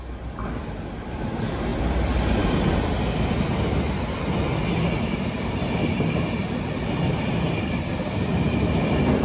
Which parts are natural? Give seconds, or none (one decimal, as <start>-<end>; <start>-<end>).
0.0-9.2